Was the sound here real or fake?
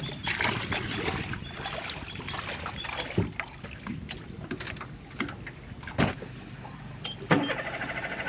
real